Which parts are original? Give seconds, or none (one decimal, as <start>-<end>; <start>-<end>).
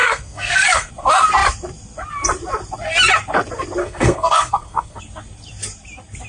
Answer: 0.9-3.8; 5.0-6.3